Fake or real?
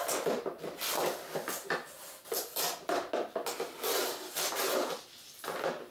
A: real